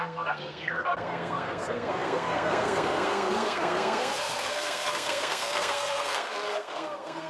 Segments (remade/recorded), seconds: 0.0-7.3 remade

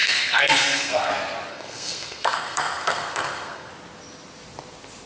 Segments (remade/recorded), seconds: 0.0-1.1 remade; 1.1-1.5 recorded; 1.5-3.7 remade; 3.7-5.1 recorded

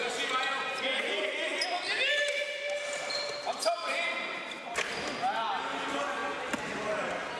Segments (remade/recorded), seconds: 0.0-7.4 recorded

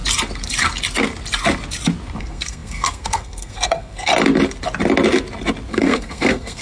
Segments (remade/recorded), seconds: 0.0-2.2 recorded; 2.2-4.1 remade; 4.1-5.7 recorded; 5.7-6.6 remade

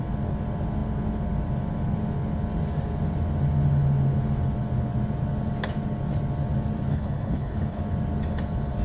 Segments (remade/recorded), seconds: 0.0-6.9 recorded; 6.9-7.8 remade; 7.8-8.8 recorded

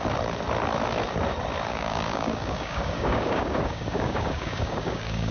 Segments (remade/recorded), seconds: 0.0-1.7 recorded; 1.7-5.3 remade

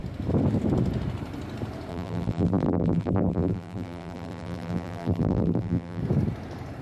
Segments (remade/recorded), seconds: 0.0-1.9 recorded; 1.9-6.0 remade; 6.0-6.8 recorded

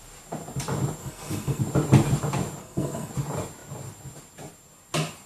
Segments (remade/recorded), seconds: 0.0-1.0 recorded; 1.0-1.6 remade; 1.6-2.6 recorded; 2.6-3.1 remade; 3.1-5.3 recorded